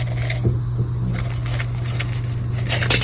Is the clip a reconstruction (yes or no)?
no